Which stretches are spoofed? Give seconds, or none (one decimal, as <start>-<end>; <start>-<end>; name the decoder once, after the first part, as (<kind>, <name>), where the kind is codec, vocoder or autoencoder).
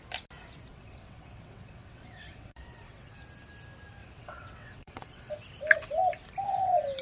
0.7-3.1 (vocoder, WaveNeXt); 4.0-5.3